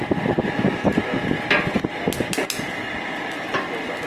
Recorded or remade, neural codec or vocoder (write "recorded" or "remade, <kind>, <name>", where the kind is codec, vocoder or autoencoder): recorded